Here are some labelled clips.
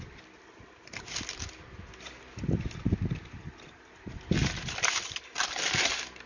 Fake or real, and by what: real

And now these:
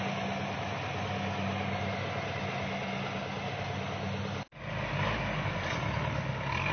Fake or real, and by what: real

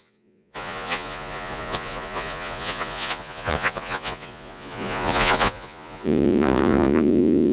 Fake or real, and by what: fake, vocoder, Vocos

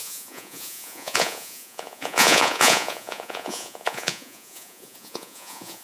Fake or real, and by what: fake, vocoder, Vocos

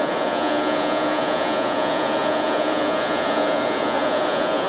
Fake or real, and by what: fake, vocoder, Vocos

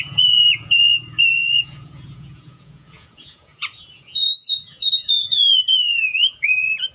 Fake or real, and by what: fake, vocoder, Vocos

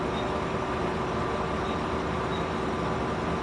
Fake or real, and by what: real